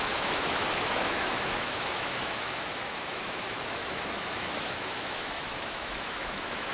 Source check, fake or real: fake